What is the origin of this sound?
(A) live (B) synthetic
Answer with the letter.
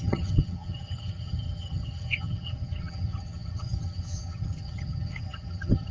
B